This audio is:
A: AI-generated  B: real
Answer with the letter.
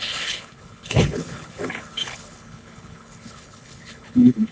A